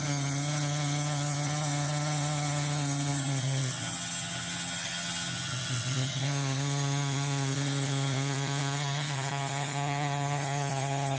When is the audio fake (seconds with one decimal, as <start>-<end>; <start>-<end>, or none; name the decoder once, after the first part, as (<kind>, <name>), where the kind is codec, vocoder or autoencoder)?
0.0-11.2 (vocoder, HiFi-GAN)